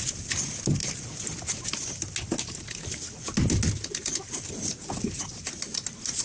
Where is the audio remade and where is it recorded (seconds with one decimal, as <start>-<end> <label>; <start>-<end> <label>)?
0.0-6.2 recorded